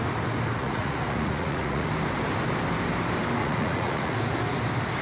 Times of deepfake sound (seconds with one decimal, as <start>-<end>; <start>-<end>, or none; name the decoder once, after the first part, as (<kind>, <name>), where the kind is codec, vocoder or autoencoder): 0.6-1.9 (vocoder, Vocos); 3.4-4.1